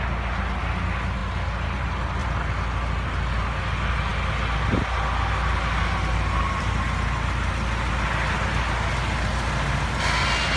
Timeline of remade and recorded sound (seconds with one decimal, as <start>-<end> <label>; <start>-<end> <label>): 0.0-10.6 recorded